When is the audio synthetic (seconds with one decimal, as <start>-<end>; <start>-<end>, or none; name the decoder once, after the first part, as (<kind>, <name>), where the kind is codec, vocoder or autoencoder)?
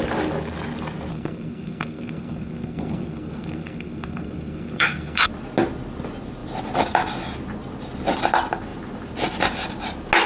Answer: 1.1-5.3 (codec, SNAC)